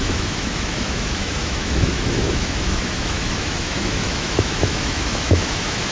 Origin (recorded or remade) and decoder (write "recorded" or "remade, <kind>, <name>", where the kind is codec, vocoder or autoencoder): remade, autoencoder, DAC-VAE